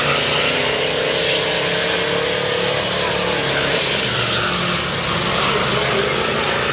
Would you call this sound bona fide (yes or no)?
yes